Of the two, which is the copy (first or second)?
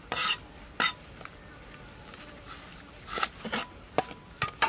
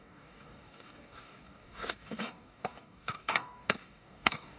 second